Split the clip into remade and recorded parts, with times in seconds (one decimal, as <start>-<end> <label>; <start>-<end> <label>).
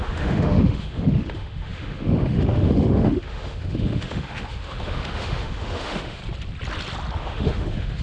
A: 0.0-6.2 remade; 6.2-7.2 recorded; 7.2-8.0 remade